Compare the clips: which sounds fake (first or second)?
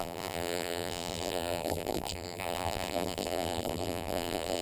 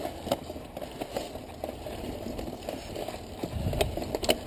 first